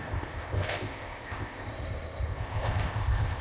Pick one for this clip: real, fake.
fake